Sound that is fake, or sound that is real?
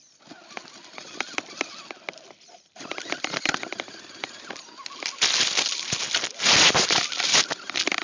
real